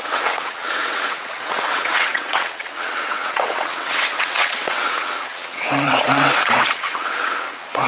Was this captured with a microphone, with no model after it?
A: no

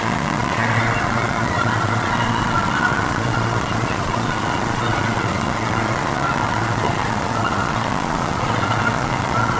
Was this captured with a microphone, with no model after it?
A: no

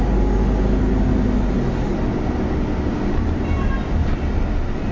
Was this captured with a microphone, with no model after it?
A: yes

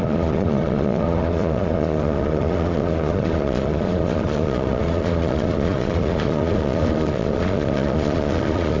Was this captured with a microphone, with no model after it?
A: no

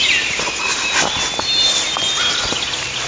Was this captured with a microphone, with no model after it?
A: yes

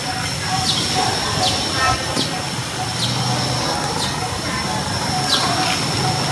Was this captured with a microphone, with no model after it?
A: yes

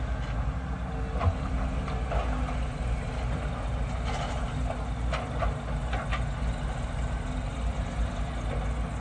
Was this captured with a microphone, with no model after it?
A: yes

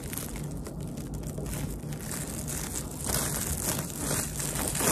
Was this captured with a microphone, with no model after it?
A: yes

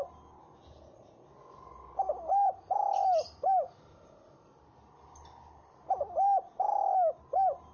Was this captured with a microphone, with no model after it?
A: yes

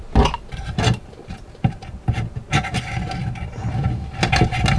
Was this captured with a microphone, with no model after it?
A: yes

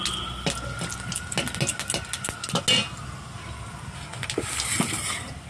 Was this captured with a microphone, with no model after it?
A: yes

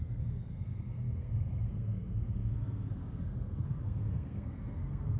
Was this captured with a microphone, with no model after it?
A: no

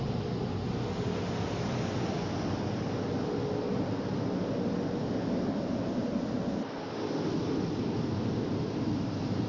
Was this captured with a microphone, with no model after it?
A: yes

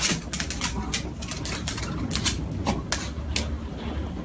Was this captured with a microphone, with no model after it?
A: yes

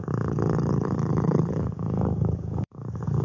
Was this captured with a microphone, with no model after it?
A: no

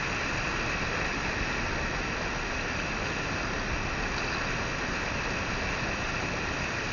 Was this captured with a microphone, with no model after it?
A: yes